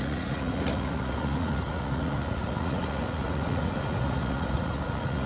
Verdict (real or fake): fake